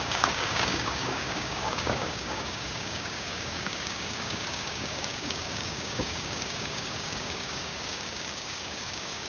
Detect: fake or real fake